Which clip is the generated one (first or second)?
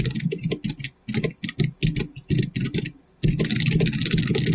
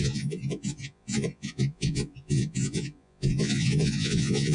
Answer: second